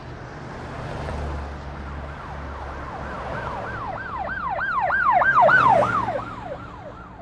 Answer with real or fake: real